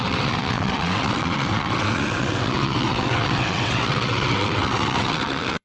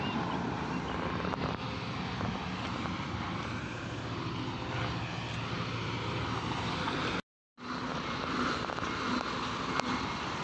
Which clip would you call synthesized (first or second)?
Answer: first